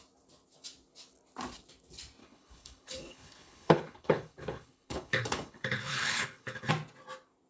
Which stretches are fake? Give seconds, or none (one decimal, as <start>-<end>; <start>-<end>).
2.2-6.7